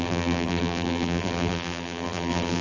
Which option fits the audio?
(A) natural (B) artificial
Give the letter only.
B